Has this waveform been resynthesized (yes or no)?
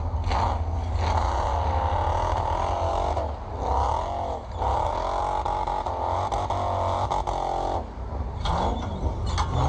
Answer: no